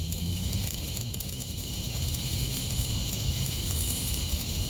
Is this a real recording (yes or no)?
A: no